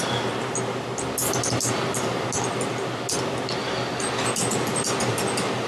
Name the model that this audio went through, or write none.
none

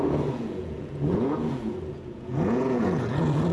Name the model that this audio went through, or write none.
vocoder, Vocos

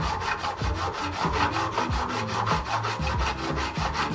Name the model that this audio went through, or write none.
none